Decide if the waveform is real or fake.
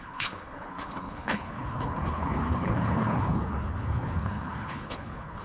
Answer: fake